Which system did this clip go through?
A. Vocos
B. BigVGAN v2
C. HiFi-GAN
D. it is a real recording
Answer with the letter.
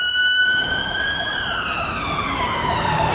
B